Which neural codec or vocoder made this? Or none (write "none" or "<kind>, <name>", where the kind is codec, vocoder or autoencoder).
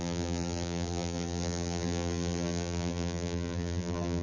vocoder, BigVGAN v2